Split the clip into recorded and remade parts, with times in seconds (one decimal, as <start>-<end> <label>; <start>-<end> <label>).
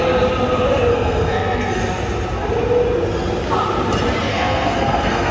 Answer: 0.0-0.9 recorded; 0.9-1.8 remade; 1.8-4.3 recorded; 4.3-5.3 remade